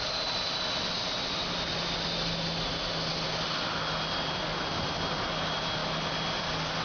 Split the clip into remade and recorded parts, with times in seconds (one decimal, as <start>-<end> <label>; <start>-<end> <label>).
0.0-6.8 recorded